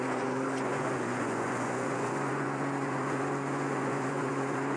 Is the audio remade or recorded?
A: remade